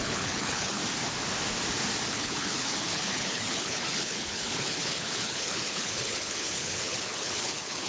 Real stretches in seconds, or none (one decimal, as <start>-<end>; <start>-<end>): 0.8-2.1